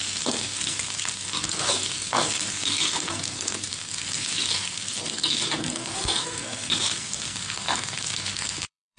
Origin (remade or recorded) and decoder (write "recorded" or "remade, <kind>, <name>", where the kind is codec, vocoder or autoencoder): remade, codec, SNAC